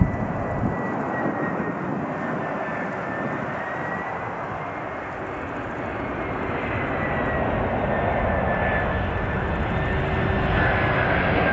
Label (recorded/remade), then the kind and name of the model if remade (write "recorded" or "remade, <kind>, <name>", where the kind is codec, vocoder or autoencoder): recorded